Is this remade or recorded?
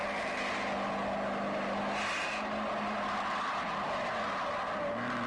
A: recorded